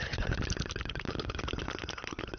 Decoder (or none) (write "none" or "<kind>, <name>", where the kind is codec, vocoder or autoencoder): none